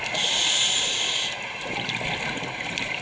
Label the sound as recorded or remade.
recorded